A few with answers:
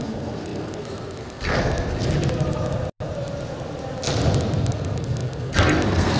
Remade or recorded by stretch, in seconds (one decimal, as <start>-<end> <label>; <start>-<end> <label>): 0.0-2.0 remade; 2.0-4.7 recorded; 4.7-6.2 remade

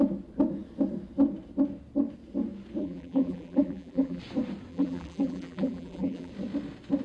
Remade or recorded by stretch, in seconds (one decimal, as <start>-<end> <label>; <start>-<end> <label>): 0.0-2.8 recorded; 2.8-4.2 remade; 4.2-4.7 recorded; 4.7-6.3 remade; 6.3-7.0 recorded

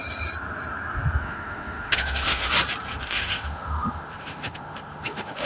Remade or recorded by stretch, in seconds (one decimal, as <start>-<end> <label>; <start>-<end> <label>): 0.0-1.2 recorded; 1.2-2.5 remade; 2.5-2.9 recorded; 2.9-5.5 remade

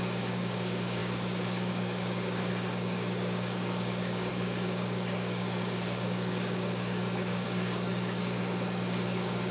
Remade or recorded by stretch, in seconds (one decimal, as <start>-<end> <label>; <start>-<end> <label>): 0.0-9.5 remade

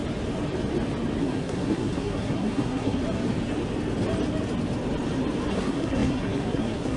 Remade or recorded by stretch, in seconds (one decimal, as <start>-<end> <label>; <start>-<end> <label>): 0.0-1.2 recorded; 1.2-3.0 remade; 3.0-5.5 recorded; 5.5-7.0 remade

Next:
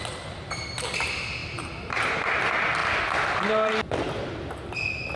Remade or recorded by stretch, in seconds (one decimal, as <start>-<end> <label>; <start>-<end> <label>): 0.0-1.4 recorded; 1.4-2.4 remade; 2.4-2.8 recorded; 2.8-3.7 remade; 3.7-5.2 recorded

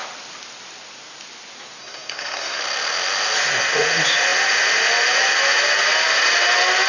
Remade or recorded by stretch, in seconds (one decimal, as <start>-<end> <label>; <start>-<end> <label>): 0.0-1.8 recorded; 1.8-2.6 remade; 2.6-6.9 recorded

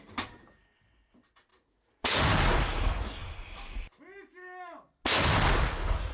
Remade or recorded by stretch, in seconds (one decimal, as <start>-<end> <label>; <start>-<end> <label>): 0.0-1.5 recorded; 1.5-2.2 remade; 2.2-6.1 recorded